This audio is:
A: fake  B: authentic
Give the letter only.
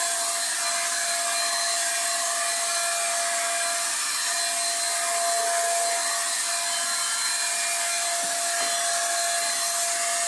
B